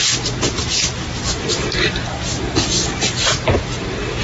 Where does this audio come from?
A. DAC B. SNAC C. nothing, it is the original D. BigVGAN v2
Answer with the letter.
C